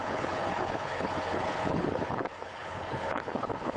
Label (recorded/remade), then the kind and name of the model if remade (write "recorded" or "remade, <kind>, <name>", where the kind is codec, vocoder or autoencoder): remade, codec, HILCodec